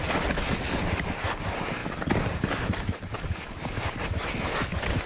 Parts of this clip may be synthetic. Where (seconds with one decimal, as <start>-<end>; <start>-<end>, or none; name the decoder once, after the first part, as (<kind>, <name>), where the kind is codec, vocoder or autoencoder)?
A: 1.8-3.8 (vocoder, BigVGAN v2)